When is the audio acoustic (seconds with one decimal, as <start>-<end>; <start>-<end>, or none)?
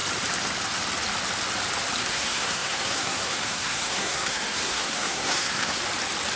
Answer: 0.0-2.0; 5.8-6.4